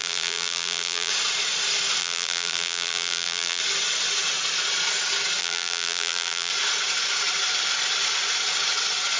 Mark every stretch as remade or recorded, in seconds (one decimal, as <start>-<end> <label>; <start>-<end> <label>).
0.0-1.1 remade; 1.1-2.0 recorded; 2.0-3.6 remade; 3.6-5.4 recorded; 5.4-6.5 remade; 6.5-9.2 recorded